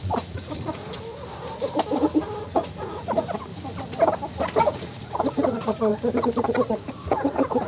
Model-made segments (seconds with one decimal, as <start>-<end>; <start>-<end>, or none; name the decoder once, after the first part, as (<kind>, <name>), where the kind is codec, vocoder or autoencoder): 0.0-0.8 (vocoder, Vocos); 2.4-3.5; 4.6-5.9; 6.5-7.7